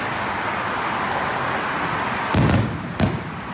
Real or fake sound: real